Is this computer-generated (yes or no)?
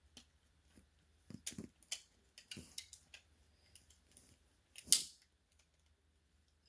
no